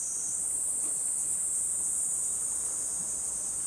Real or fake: real